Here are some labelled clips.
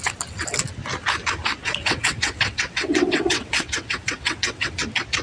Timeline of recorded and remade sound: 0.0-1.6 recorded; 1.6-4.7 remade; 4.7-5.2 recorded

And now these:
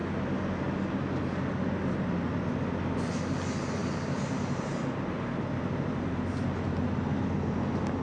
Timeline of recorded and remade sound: 0.0-8.0 recorded

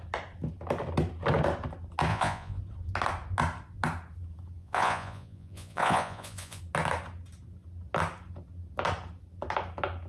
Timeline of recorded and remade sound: 0.0-2.1 recorded; 2.1-2.6 remade; 2.6-4.6 recorded; 4.6-6.6 remade; 6.6-10.1 recorded

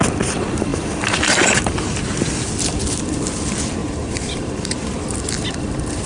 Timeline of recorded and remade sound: 0.0-0.7 recorded; 0.7-1.7 remade; 1.7-3.8 recorded; 3.8-5.0 remade; 5.0-6.1 recorded